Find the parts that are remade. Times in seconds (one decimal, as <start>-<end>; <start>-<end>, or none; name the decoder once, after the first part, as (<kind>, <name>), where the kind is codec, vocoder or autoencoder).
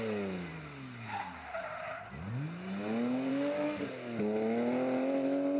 0.5-1.2 (codec, DAC); 3.3-4.2